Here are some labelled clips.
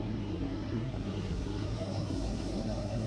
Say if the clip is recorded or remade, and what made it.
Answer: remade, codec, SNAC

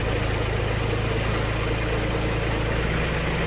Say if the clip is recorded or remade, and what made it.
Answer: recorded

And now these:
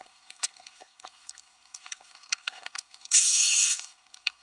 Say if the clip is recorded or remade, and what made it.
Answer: remade, codec, SNAC